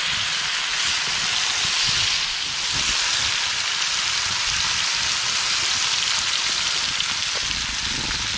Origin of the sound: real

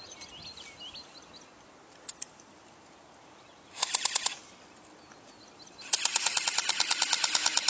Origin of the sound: real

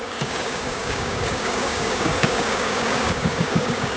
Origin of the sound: fake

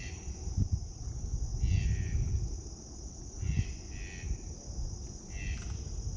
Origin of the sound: real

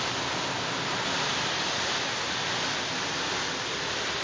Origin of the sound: real